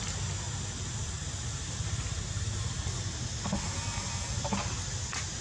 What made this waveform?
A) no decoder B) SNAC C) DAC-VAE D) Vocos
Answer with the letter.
A